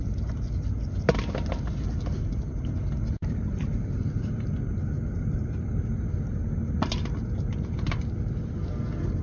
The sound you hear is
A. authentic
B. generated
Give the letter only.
A